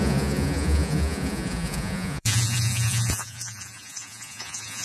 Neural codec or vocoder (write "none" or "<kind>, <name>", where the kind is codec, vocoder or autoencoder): vocoder, Vocos